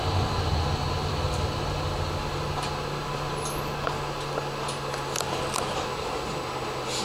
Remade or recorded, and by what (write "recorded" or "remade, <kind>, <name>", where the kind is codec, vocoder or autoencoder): recorded